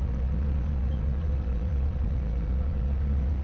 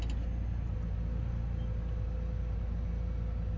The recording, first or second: second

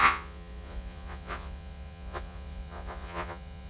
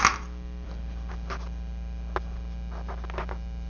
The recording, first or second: second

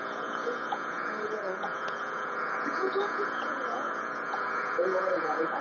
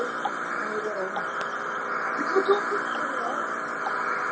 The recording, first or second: second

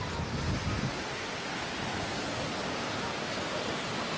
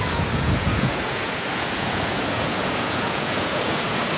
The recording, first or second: first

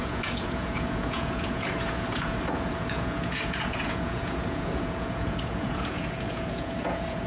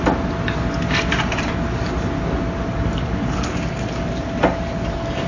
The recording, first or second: second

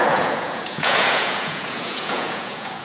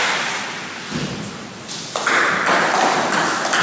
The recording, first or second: second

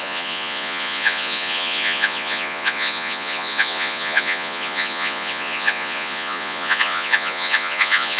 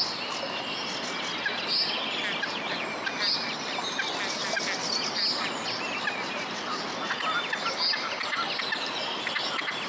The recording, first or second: second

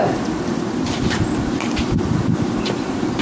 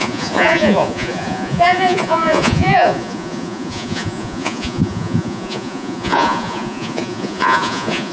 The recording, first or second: first